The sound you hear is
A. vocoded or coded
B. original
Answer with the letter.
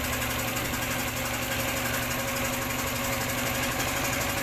B